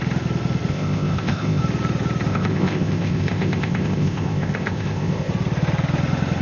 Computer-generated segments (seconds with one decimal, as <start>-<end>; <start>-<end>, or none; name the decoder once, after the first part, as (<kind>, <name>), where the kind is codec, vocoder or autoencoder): 0.7-1.6 (codec, ZipCodec); 2.3-5.3